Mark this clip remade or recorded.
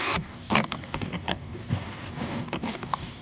remade